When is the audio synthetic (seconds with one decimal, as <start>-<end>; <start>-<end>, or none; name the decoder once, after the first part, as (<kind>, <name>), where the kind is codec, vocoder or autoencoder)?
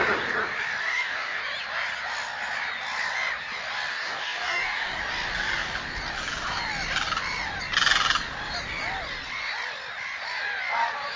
0.8-1.4 (codec, DAC); 3.9-5.0